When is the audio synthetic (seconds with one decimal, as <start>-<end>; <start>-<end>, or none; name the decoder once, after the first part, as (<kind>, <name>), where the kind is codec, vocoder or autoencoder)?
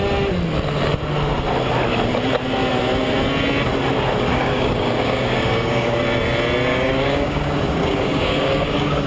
4.3-6.0 (codec, DAC); 6.7-9.1